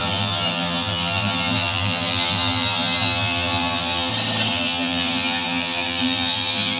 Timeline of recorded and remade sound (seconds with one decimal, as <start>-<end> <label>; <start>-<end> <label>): 0.0-4.1 remade; 4.1-4.5 recorded; 4.5-6.8 remade